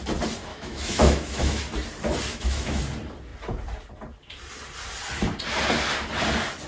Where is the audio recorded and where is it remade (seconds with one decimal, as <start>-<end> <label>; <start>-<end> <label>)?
0.0-0.5 recorded; 0.5-1.6 remade; 1.6-2.3 recorded; 2.3-2.8 remade; 2.8-6.7 recorded